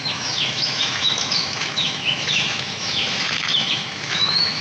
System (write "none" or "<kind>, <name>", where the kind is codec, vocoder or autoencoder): autoencoder, DAC-VAE